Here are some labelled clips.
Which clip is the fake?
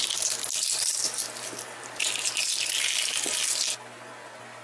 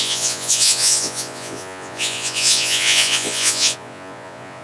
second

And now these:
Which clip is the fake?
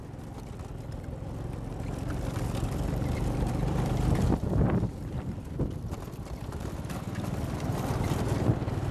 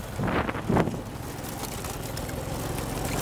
first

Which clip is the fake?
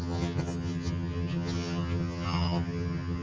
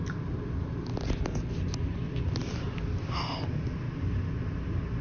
first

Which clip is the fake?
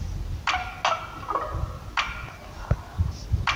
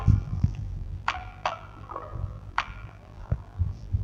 second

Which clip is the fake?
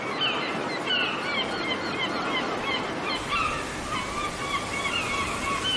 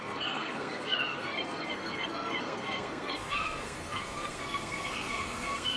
second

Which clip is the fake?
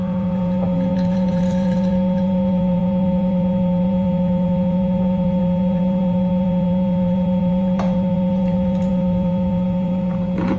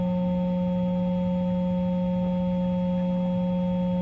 first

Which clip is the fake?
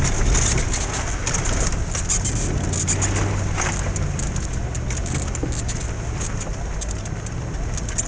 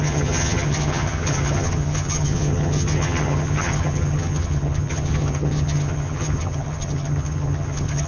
second